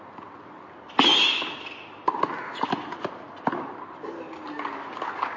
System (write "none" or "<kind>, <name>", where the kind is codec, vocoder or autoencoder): none